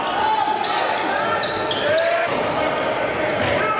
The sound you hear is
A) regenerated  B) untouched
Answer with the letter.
B